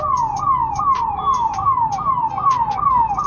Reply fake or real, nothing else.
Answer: real